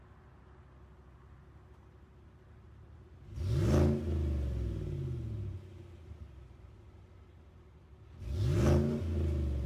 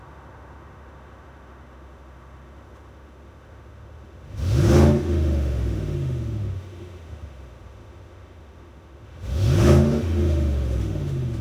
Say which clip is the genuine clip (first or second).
first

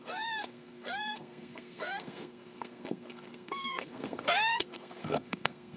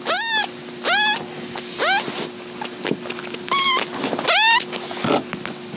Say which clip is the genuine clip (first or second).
second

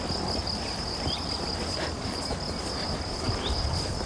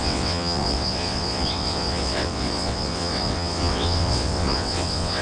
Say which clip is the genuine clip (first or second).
first